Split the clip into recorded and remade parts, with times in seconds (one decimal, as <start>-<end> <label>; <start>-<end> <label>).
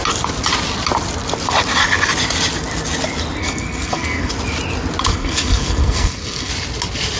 0.0-3.4 recorded; 3.4-4.3 remade; 4.3-5.1 recorded; 5.1-6.5 remade; 6.5-7.2 recorded